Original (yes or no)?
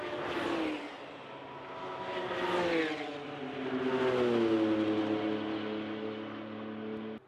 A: yes